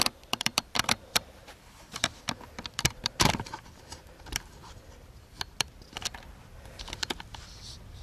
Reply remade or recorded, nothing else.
remade